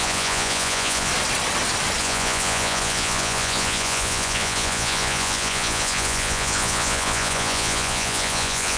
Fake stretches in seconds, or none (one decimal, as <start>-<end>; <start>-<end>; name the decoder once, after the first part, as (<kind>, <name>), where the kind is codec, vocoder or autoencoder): 0.0-1.1 (vocoder, Vocos); 2.0-8.8